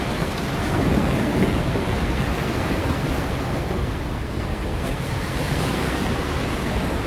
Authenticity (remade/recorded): remade